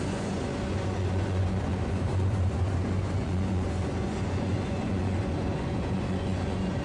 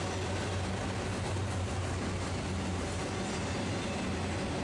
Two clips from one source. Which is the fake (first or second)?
first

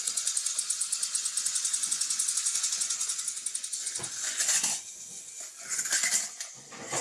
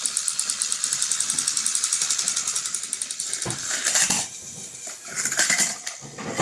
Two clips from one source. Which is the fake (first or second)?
first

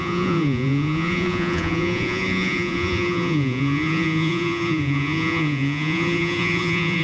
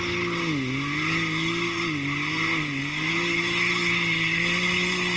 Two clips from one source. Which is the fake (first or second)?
first